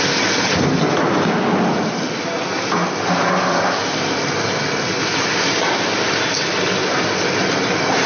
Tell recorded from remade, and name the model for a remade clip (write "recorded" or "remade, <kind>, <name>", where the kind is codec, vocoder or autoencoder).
recorded